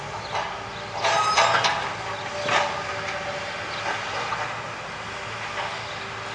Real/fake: real